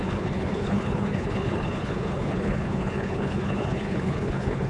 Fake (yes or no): yes